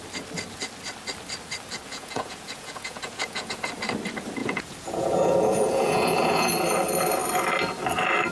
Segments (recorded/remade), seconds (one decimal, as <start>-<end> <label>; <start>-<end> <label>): 0.0-1.9 recorded; 1.9-3.7 remade; 3.7-4.4 recorded; 4.4-6.5 remade; 6.5-8.3 recorded